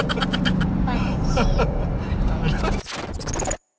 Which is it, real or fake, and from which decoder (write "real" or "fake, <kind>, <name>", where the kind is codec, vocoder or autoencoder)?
real